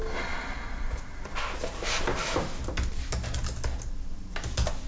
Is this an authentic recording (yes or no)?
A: yes